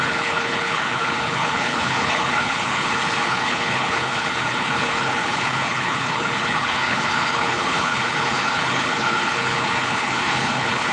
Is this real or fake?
fake